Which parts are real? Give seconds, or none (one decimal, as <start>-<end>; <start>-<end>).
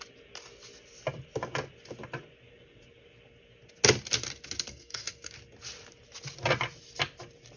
0.0-4.7; 5.3-7.6